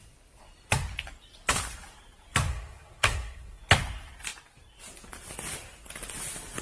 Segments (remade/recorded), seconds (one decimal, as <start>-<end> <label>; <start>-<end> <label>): 0.0-2.5 recorded; 2.5-3.6 remade; 3.6-6.6 recorded